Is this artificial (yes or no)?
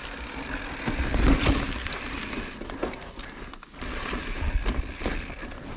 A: no